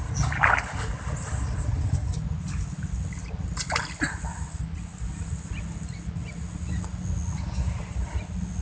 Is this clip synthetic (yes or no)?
no